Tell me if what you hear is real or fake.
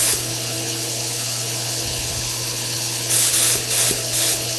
fake